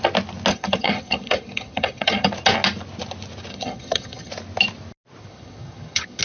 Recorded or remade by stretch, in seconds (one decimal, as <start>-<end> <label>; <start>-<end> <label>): 0.0-0.5 recorded; 0.5-2.3 remade; 2.3-3.5 recorded; 3.5-4.3 remade; 4.3-5.2 recorded; 5.2-6.2 remade